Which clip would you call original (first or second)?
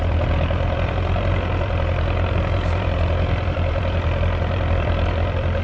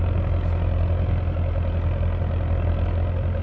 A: second